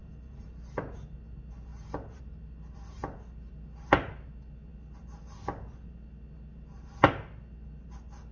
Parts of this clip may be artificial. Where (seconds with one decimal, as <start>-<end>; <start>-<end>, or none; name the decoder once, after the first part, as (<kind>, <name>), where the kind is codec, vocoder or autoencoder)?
0.0-0.5 (vocoder, BigVGAN v2); 1.7-2.2